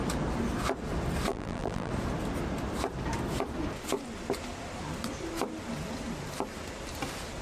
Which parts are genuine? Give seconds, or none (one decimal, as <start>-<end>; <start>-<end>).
0.0-1.3; 1.9-7.4